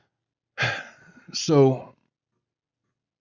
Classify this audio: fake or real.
real